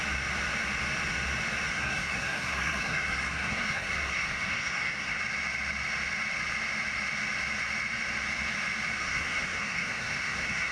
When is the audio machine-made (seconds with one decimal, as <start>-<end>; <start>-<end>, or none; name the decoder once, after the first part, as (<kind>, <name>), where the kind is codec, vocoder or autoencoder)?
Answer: 1.7-5.2 (codec, SNAC); 9.0-10.7

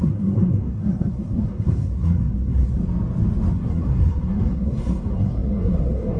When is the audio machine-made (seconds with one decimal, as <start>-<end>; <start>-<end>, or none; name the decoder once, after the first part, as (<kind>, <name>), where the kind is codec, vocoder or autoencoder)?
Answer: 0.0-2.8 (codec, SNAC); 3.5-6.2

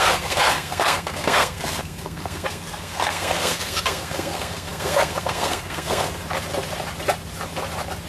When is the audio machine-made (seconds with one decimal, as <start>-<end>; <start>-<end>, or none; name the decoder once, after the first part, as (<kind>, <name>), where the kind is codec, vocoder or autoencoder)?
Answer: 0.0-6.2 (codec, SNAC)